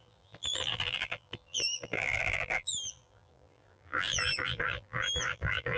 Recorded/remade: remade